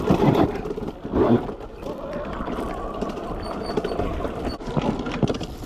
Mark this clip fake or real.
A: real